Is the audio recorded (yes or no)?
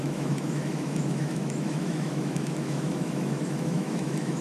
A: no